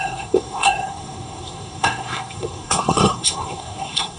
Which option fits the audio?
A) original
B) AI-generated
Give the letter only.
B